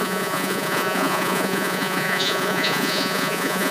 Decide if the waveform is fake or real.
fake